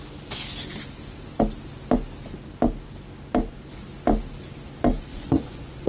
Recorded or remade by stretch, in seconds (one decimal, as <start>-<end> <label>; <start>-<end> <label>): 0.0-5.1 recorded; 5.1-5.9 remade